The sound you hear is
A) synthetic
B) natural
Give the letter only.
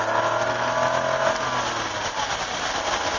B